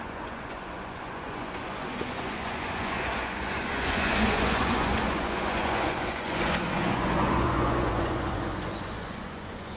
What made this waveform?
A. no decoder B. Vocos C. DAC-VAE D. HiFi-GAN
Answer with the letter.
B